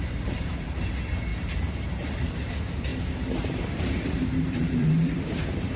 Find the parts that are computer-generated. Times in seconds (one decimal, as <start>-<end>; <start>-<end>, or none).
0.0-0.5; 1.3-2.5; 2.9-5.8